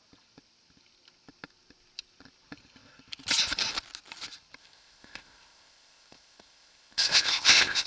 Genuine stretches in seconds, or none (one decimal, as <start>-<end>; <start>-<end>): 0.0-4.6